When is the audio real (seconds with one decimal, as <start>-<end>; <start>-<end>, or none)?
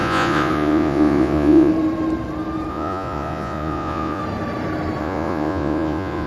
1.7-2.7; 4.2-5.0